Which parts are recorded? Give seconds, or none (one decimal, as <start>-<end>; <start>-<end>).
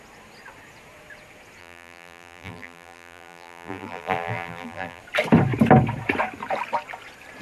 0.0-1.6; 5.0-7.4